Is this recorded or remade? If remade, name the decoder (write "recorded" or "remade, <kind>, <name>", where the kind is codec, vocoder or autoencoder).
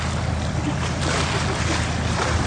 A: recorded